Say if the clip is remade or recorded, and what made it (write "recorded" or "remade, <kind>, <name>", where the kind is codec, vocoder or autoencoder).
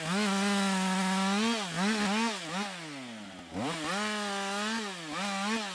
recorded